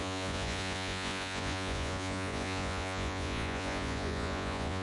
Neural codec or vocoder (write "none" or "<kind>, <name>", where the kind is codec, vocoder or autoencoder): vocoder, Vocos